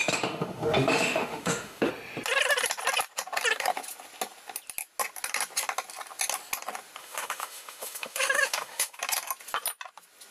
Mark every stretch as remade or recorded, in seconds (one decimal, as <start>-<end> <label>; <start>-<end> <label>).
0.0-1.9 remade; 1.9-7.0 recorded; 7.0-9.0 remade; 9.0-10.3 recorded